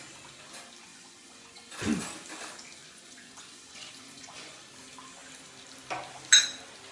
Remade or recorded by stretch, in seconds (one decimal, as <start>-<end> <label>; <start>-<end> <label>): 0.0-0.9 recorded; 0.9-1.7 remade; 1.7-2.8 recorded; 2.8-4.6 remade; 4.6-6.9 recorded